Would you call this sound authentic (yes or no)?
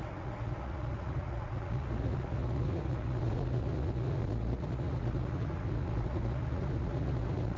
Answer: no